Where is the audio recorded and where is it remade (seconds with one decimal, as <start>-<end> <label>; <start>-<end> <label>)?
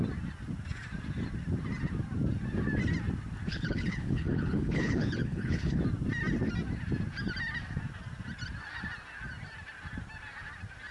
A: 0.0-3.5 recorded; 3.5-5.8 remade; 5.8-10.9 recorded